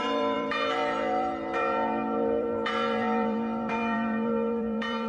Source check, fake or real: fake